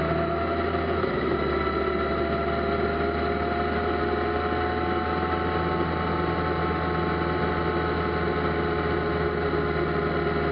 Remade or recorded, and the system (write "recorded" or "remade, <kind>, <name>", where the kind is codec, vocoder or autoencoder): recorded